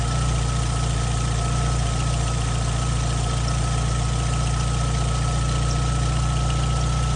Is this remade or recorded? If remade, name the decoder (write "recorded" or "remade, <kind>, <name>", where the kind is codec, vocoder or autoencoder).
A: recorded